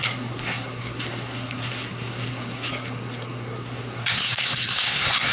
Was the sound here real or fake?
fake